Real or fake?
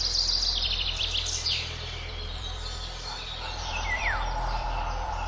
fake